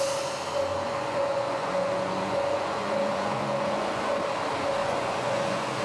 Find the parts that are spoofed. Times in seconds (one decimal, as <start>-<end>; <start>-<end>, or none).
0.7-4.2; 4.8-5.8